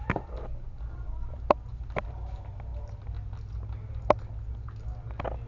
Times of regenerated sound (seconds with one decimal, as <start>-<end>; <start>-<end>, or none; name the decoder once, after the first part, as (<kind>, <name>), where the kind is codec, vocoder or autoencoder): none